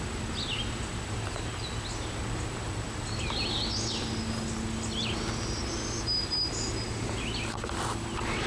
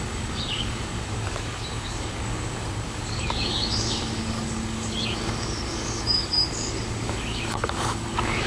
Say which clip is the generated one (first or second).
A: second